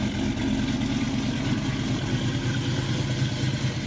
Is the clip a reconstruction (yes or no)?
no